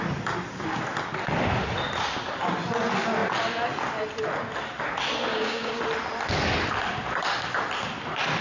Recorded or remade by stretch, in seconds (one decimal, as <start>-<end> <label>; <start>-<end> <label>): 0.0-5.3 recorded; 5.3-5.8 remade; 5.8-8.4 recorded

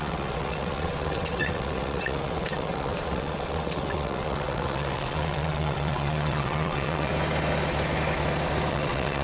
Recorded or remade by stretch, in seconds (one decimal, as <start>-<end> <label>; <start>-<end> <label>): 0.0-7.1 remade; 7.1-8.7 recorded; 8.7-9.2 remade